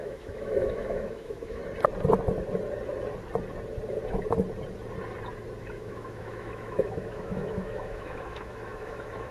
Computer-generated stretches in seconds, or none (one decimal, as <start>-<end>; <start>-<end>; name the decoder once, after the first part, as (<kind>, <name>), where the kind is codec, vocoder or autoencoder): 0.0-1.6 (autoencoder, DAC-VAE); 5.6-9.3